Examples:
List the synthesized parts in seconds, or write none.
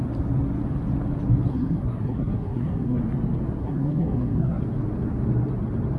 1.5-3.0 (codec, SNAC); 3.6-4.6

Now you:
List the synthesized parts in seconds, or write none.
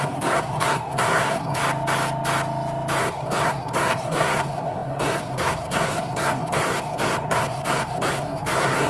0.0-1.6 (codec, SNAC); 3.0-8.9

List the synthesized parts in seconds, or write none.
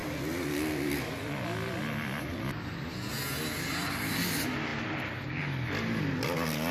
none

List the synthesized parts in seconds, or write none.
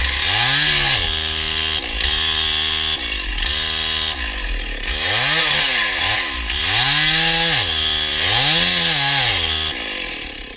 none